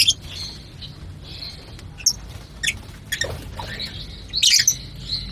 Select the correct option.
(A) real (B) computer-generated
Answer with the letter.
A